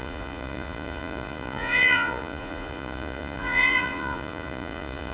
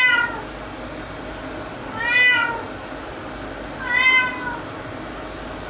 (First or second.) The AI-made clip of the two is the first